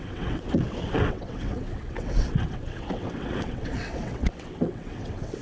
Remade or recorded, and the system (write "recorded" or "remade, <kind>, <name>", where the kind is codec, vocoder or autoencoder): remade, vocoder, WaveNeXt